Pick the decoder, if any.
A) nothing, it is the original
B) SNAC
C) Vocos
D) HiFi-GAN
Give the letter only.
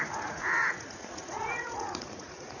C